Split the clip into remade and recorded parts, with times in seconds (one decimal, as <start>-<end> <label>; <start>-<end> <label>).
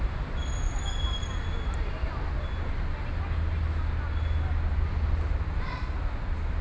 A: 0.0-6.6 recorded